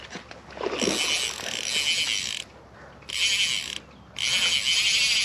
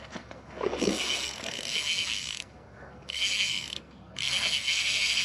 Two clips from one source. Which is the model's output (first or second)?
second